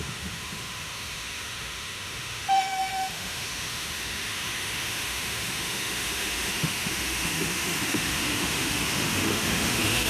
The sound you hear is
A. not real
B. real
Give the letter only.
A